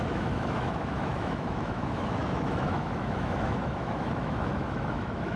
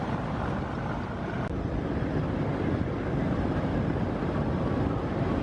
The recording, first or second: second